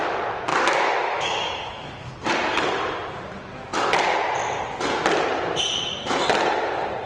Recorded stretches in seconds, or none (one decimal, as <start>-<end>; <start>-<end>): 0.0-0.5; 2.1-7.1